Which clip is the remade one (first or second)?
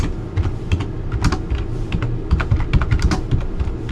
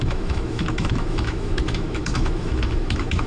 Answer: second